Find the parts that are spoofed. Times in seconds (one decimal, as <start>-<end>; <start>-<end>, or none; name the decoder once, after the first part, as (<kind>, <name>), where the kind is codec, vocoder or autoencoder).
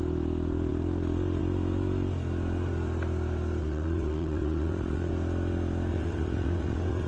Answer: 3.6-5.1 (vocoder, WaveNeXt); 5.9-7.1